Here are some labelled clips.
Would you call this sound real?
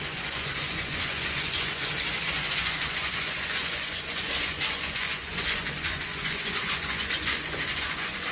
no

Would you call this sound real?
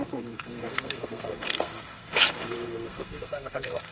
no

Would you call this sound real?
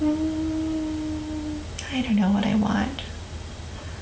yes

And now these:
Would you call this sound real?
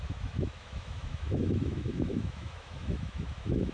no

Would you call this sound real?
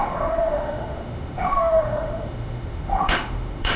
no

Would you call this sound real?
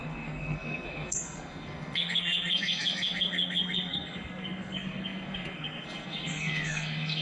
no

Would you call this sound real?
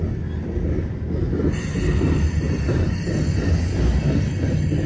yes